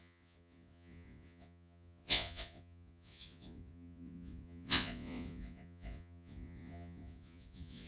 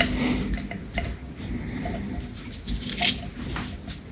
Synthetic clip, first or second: first